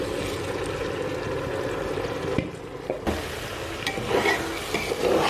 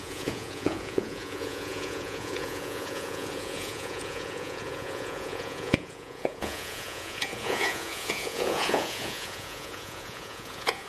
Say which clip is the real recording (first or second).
first